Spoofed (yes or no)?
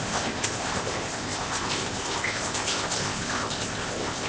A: yes